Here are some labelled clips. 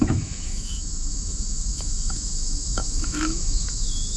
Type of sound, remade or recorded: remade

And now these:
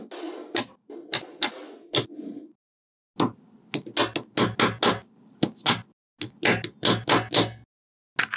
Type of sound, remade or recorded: recorded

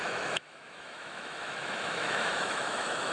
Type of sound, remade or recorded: remade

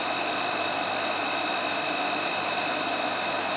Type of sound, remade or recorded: recorded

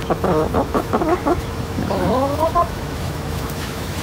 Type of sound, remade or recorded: remade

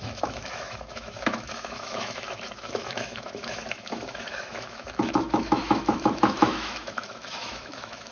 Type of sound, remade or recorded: remade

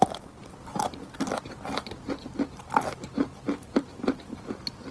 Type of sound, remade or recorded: recorded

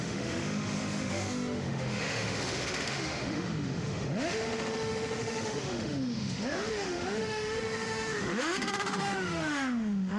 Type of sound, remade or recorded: remade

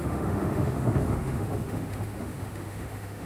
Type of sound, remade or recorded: remade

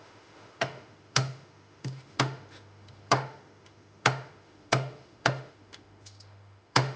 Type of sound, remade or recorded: remade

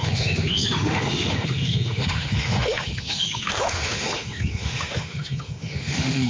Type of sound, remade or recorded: remade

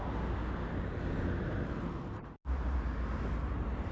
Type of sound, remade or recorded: recorded